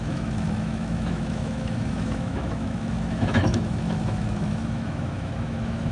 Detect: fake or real fake